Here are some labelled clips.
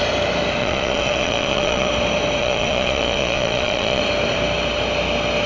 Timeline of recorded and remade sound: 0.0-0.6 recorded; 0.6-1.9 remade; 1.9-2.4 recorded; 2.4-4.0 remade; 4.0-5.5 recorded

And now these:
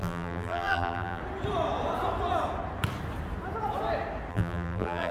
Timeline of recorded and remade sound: 0.0-1.2 remade; 1.2-4.3 recorded; 4.3-5.1 remade

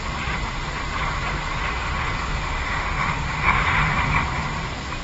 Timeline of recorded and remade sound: 0.0-1.7 recorded; 1.7-3.6 remade; 3.6-5.0 recorded

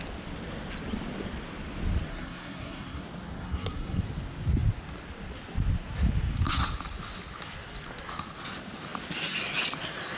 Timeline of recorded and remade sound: 0.0-2.1 recorded; 2.1-3.0 remade; 3.0-3.4 recorded; 3.4-4.0 remade; 4.0-10.2 recorded